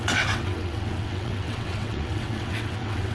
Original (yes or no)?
no